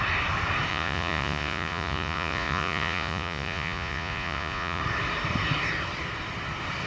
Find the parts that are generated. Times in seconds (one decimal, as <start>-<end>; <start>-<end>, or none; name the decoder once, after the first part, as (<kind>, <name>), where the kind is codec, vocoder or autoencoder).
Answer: 0.7-4.8 (vocoder, Vocos)